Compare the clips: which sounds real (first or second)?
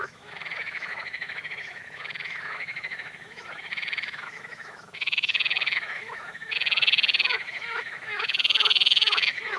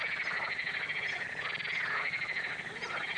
second